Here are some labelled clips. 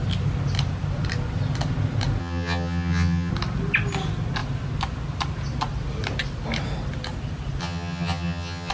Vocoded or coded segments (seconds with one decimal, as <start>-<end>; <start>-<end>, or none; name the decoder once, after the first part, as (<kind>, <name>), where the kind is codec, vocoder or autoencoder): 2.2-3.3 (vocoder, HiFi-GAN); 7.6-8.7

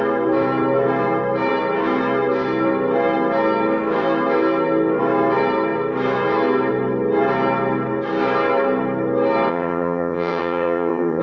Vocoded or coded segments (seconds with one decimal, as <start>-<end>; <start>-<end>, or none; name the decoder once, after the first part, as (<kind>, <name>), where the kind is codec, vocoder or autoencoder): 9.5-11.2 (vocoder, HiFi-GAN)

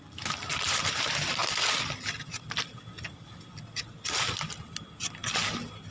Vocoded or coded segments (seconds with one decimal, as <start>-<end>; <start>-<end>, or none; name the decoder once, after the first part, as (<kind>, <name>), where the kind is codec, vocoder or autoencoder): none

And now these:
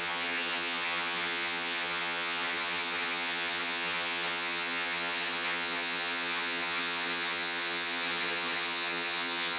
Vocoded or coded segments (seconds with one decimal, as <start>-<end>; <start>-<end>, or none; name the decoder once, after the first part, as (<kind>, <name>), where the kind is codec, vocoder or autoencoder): 0.0-9.6 (vocoder, HiFi-GAN)